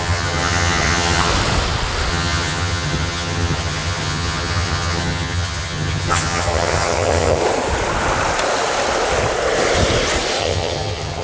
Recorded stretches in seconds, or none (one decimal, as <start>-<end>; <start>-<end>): 1.3-2.1; 7.4-10.4